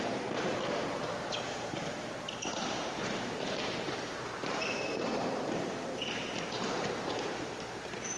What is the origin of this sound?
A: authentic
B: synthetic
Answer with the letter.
B